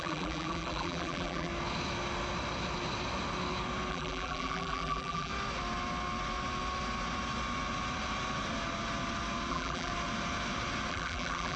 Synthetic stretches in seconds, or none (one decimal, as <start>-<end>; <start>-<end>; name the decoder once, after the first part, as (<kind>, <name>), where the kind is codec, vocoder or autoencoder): 0.0-1.5 (vocoder, BigVGAN v2); 3.9-5.3; 9.5-9.9; 10.9-11.6